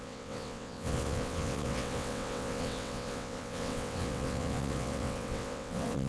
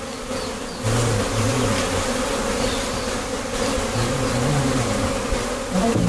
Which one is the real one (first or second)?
second